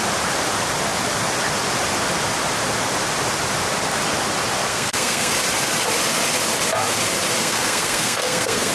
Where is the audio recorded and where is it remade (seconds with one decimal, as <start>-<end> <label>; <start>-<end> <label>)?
0.0-4.7 recorded; 4.7-5.3 remade; 5.3-7.4 recorded; 7.4-8.7 remade